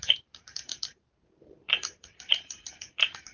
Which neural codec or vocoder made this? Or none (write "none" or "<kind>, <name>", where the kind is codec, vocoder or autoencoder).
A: vocoder, BigVGAN v2